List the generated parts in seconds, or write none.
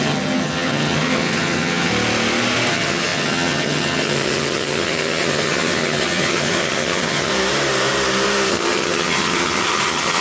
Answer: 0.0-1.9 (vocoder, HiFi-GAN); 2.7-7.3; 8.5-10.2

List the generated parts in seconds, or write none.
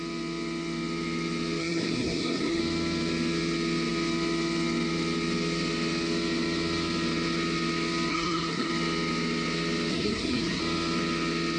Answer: 1.6-2.6 (codec, SNAC); 8.1-8.7; 9.9-10.6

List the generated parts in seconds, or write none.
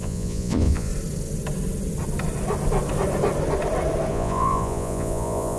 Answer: 0.0-0.9 (vocoder, Vocos); 4.1-5.6